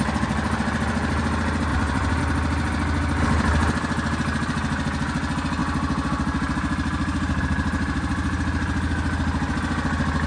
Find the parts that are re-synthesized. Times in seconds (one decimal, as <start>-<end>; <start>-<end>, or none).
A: 1.7-2.2